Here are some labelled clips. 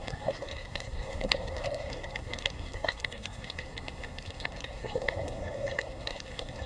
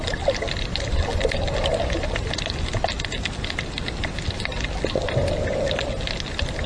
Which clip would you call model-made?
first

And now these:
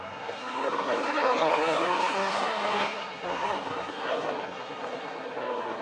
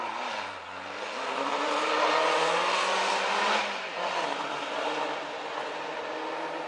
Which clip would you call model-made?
first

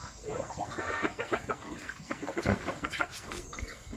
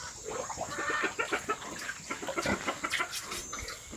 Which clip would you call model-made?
first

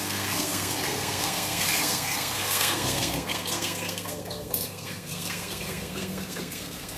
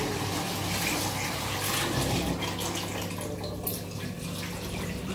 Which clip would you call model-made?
first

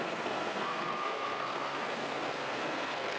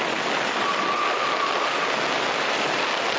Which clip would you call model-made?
first